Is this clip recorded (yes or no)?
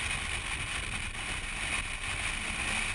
yes